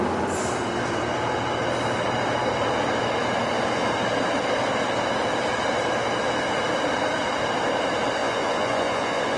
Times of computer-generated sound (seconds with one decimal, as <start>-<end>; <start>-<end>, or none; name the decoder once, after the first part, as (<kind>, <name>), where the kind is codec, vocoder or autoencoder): 8.2-9.4 (vocoder, Vocos)